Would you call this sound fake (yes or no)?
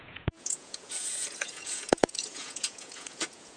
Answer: yes